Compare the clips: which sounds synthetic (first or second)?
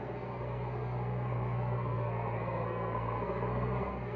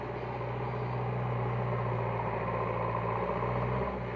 first